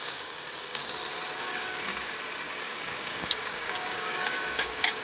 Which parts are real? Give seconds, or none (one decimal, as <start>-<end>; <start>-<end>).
0.8-1.4; 1.9-2.5